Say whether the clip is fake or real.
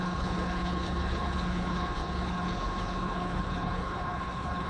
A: fake